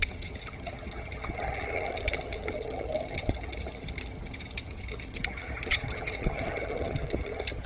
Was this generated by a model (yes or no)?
yes